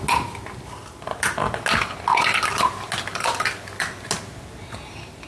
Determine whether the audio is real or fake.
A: real